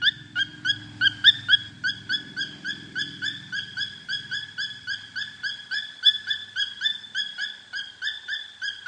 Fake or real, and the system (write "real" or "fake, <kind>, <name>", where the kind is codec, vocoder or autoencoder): fake, vocoder, BigVGAN v2